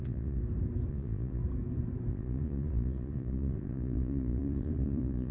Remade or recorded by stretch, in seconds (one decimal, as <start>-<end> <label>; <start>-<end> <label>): 0.0-0.4 remade; 0.4-0.9 recorded; 0.9-1.4 remade; 1.4-2.1 recorded; 2.1-5.3 remade